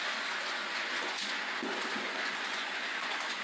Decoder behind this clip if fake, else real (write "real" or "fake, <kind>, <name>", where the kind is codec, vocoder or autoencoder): fake, vocoder, Vocos